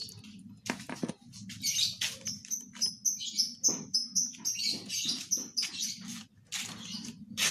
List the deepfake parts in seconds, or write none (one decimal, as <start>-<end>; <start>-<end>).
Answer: none